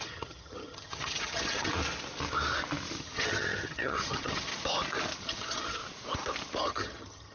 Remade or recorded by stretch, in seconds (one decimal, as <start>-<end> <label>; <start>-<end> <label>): 0.0-1.7 remade; 1.7-3.0 recorded; 3.0-4.5 remade; 4.5-5.2 recorded; 5.2-5.8 remade; 5.8-6.6 recorded; 6.6-7.3 remade